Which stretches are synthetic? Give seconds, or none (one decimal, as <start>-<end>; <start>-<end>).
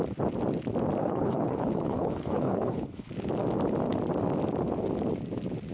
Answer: 1.0-3.1